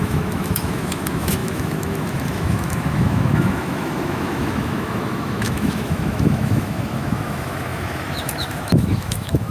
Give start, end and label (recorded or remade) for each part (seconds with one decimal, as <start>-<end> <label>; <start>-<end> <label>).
0.0-9.5 remade